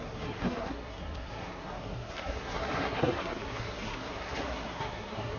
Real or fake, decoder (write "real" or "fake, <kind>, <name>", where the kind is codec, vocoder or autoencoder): fake, codec, SNAC